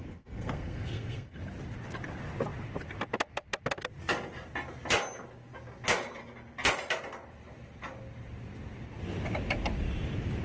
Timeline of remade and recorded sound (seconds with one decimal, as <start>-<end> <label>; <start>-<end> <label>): 0.0-1.4 remade; 1.4-10.4 recorded